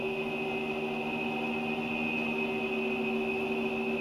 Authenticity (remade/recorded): recorded